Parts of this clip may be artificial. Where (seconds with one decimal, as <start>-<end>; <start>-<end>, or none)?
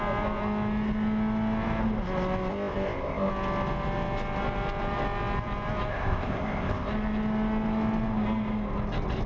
2.5-3.3; 5.9-6.9